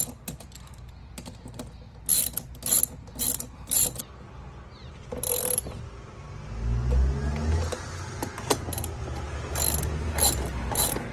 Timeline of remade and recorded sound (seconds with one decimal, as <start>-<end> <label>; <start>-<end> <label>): 0.0-11.1 recorded